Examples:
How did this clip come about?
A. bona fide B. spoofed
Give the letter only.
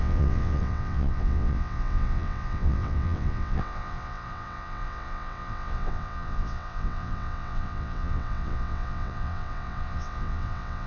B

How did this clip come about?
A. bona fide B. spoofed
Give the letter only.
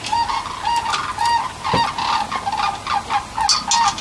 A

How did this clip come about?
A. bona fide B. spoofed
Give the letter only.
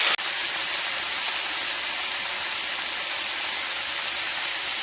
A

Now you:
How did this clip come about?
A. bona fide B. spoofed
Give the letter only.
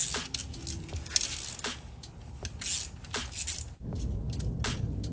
A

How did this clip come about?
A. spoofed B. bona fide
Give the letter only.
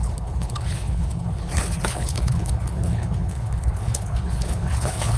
A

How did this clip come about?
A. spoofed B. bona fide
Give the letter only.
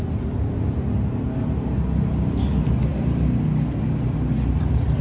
B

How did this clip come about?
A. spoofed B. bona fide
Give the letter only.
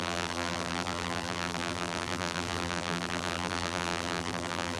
A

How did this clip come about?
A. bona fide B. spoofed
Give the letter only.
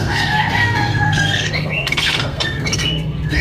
B